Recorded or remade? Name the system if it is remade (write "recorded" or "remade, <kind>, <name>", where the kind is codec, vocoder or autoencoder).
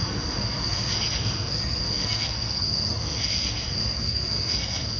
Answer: remade, codec, SNAC